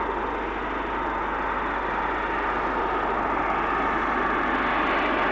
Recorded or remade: recorded